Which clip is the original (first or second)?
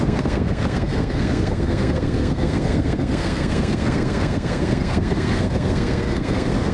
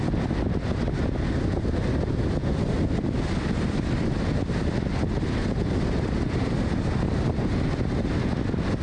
second